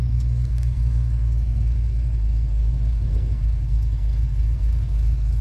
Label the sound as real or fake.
fake